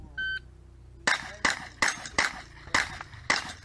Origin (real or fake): real